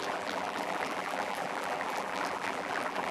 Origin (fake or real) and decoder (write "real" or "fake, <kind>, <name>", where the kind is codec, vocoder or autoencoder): fake, vocoder, BigVGAN v2